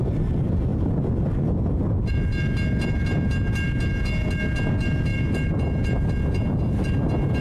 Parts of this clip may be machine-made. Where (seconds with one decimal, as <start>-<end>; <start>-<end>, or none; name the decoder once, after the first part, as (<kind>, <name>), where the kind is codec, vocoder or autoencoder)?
none